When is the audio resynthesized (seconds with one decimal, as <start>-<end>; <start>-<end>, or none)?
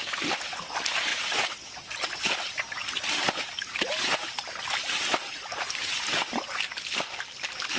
none